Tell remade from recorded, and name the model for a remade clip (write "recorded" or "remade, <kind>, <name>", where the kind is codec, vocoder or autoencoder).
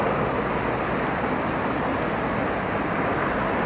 recorded